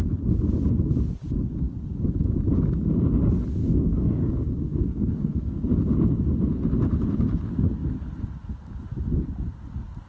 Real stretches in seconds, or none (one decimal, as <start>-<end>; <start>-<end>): 0.0-3.6; 5.6-10.1